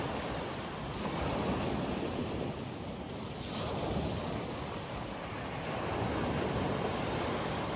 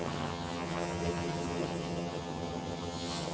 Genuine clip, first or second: first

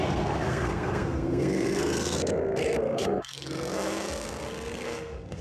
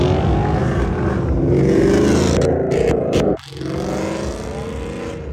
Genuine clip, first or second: second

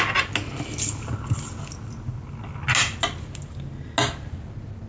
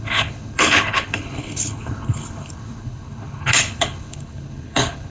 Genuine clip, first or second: first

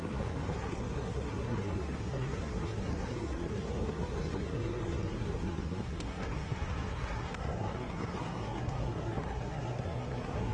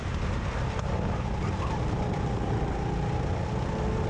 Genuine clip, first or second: second